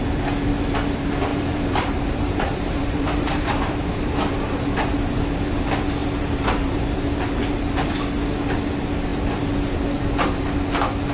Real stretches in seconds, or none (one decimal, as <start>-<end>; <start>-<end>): 0.0-1.3; 4.3-6.0; 6.8-11.1